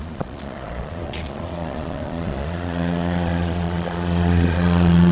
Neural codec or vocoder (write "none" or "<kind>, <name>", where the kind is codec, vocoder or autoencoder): vocoder, Vocos